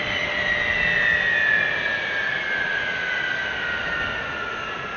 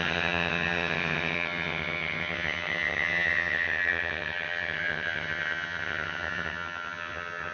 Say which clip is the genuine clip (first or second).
first